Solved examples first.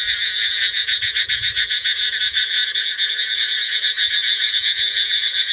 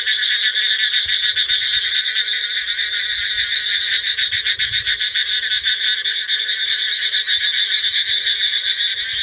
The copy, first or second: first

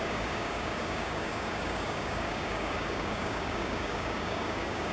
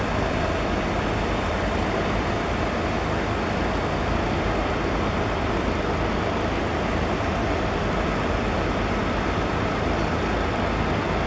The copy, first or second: first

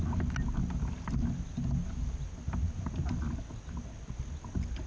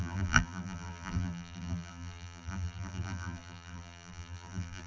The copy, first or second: second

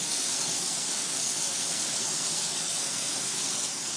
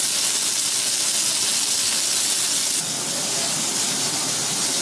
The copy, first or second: first